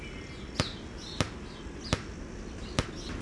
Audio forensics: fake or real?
real